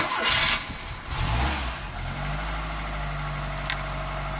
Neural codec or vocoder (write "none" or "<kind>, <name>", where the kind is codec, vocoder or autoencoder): none